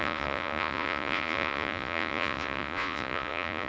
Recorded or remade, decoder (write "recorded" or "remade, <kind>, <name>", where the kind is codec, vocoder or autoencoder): remade, vocoder, Vocos